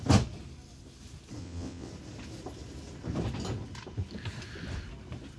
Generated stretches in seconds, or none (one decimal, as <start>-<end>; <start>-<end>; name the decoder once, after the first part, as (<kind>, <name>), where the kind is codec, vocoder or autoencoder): 1.4-1.9 (vocoder, WaveNeXt)